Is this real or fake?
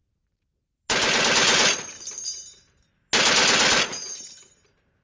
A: real